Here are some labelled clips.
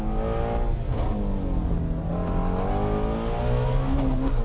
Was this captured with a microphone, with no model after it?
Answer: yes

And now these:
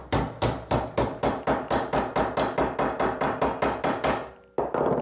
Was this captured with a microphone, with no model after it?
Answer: yes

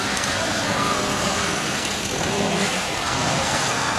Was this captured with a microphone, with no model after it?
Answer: no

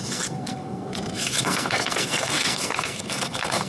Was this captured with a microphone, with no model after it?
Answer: no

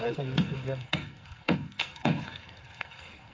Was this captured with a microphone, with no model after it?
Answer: no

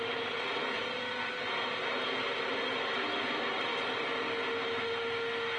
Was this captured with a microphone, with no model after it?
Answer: yes